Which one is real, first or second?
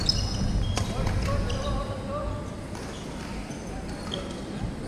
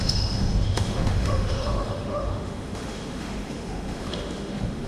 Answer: first